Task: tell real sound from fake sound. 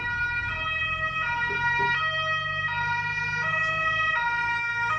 real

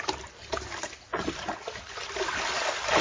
real